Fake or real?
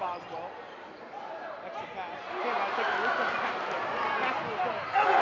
real